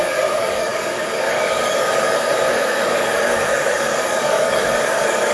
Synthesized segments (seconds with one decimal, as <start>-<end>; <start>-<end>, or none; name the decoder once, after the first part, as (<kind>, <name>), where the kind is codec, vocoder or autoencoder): 0.0-5.3 (codec, DAC)